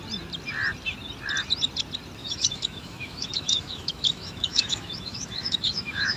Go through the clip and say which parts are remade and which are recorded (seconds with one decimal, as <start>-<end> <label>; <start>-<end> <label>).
0.0-2.2 recorded; 2.2-6.2 remade